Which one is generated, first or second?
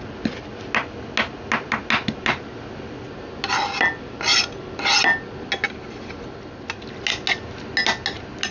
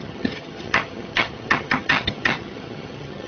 second